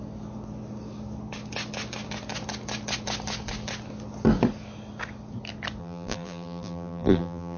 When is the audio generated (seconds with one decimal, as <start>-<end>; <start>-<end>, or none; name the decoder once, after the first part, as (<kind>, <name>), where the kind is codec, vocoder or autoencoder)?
5.8-7.6 (vocoder, BigVGAN v2)